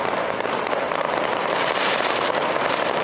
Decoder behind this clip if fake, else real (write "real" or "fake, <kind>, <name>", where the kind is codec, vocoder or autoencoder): fake, vocoder, BigVGAN v2